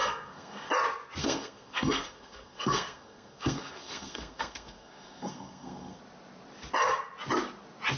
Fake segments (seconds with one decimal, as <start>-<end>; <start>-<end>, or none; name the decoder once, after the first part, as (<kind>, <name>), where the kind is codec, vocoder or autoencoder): 0.0-0.7 (codec, SNAC); 1.2-6.0